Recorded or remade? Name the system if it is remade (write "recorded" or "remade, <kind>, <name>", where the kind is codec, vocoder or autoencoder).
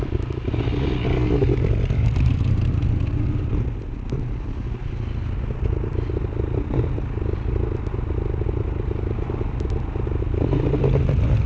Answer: recorded